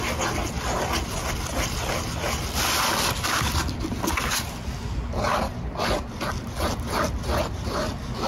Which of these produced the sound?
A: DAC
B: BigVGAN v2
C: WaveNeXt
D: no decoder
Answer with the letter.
D